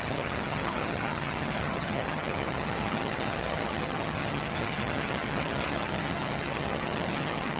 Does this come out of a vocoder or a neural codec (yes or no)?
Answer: yes